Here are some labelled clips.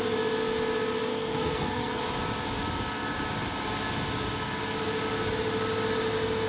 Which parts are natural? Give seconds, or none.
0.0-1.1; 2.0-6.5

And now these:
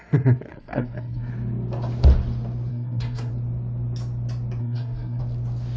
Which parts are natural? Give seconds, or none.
0.0-0.5; 1.3-2.7; 3.3-4.6; 5.2-5.8

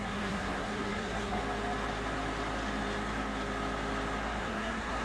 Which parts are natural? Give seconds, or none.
1.4-4.4

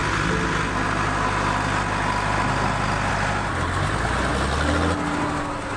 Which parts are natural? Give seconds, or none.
0.0-5.8

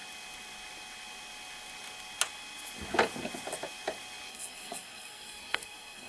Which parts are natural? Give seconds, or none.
0.0-4.3

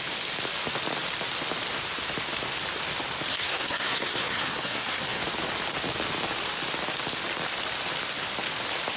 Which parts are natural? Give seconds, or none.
0.0-3.3; 5.2-9.0